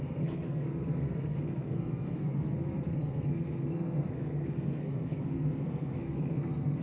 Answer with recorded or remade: remade